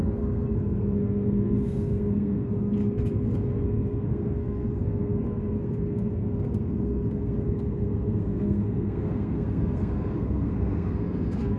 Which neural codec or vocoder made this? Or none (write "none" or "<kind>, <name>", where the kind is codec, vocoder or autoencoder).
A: codec, SNAC